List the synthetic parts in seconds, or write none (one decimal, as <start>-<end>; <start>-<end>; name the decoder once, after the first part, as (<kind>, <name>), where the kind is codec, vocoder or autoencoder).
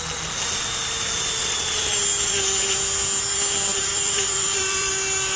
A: 3.9-4.9 (vocoder, BigVGAN v2)